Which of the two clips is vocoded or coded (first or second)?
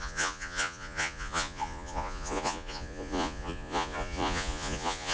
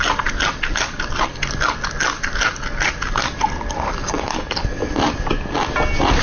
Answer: first